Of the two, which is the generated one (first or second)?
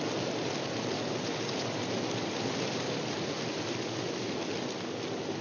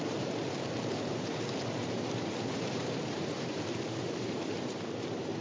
second